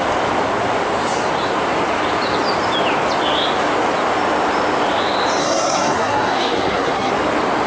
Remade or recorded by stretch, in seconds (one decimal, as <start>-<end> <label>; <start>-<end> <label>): 0.0-5.4 recorded; 5.4-7.1 remade; 7.1-7.7 recorded